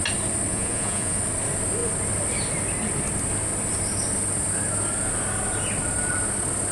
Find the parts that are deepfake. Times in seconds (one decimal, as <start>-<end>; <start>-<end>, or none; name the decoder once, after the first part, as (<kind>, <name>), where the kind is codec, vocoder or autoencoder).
0.5-1.2 (vocoder, Vocos)

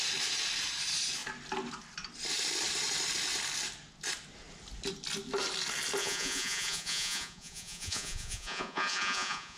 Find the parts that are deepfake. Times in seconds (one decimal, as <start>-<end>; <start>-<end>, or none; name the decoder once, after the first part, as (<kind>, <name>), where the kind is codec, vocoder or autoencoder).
6.0-9.6 (vocoder, Vocos)

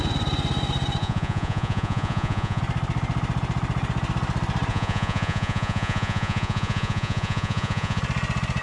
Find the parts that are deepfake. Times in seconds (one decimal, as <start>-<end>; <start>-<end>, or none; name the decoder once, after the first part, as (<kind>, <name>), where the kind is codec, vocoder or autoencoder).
1.0-2.6 (vocoder, Vocos); 4.7-8.0

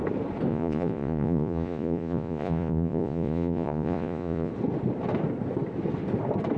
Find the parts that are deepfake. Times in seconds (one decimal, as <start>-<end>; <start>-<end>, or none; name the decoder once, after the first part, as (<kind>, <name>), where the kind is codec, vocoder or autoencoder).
0.5-4.5 (vocoder, Vocos)

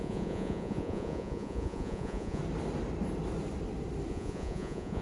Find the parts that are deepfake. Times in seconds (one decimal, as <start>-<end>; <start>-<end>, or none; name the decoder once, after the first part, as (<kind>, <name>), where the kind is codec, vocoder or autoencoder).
0.0-2.4 (vocoder, Vocos); 4.1-5.0